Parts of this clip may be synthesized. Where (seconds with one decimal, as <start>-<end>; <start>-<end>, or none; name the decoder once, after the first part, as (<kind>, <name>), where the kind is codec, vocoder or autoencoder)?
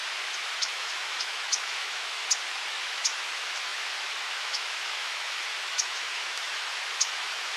0.6-2.2 (autoencoder, DAC-VAE); 2.7-7.6